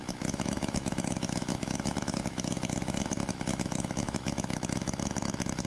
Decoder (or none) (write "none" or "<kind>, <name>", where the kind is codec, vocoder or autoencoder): autoencoder, DAC-VAE